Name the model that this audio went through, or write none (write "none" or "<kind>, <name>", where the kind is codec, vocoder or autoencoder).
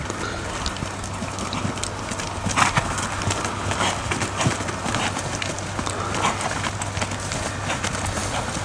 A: none